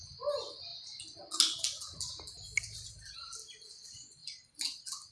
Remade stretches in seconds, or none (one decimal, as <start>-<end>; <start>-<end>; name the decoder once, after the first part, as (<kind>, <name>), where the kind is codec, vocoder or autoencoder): none